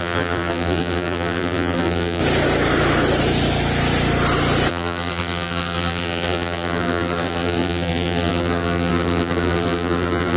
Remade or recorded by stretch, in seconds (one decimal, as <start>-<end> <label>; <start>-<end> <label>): 0.0-2.2 remade; 2.2-4.7 recorded; 4.7-10.4 remade